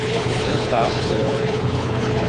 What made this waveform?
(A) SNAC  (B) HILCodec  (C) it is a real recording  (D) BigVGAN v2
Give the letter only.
B